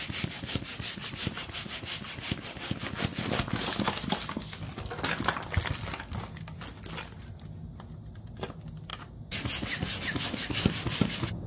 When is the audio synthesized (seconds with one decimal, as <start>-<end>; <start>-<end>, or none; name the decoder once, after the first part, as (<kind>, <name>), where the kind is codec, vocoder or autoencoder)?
none